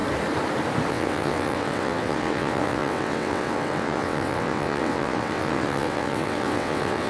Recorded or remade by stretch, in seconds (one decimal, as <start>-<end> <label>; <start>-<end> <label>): 0.0-0.9 recorded; 0.9-7.1 remade